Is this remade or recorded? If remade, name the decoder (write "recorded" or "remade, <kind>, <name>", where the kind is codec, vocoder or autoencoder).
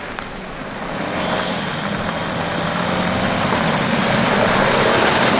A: recorded